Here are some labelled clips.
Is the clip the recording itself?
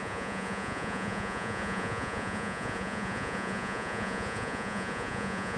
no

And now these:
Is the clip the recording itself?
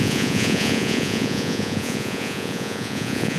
no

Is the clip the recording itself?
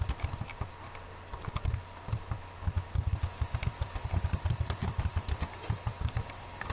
yes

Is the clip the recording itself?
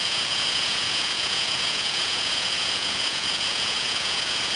no